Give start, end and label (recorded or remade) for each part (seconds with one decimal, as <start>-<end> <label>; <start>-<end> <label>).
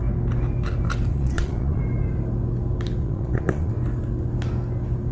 0.0-1.1 recorded; 1.1-1.8 remade; 1.8-3.0 recorded; 3.0-3.7 remade; 3.7-5.1 recorded